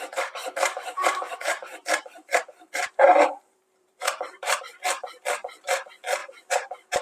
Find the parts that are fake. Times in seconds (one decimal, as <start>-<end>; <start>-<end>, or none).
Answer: 0.4-4.6; 6.2-7.0